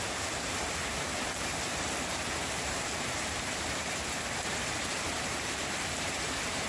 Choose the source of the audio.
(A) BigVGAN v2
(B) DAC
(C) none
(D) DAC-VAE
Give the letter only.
A